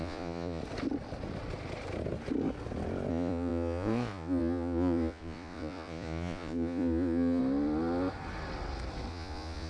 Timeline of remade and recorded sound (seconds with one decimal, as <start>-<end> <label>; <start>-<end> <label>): 0.0-0.6 remade; 0.6-3.1 recorded; 3.1-7.4 remade; 7.4-9.1 recorded; 9.1-9.7 remade